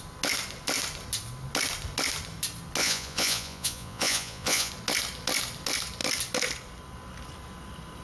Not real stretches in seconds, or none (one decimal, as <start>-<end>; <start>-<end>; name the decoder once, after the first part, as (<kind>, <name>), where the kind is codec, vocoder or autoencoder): 2.8-4.7 (vocoder, Vocos)